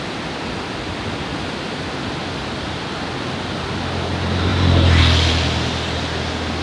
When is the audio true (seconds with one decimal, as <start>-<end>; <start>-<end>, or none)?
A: 0.0-4.5; 5.0-6.6